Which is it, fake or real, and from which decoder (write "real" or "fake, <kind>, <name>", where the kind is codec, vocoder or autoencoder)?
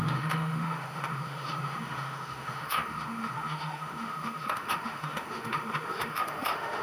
fake, autoencoder, DAC-VAE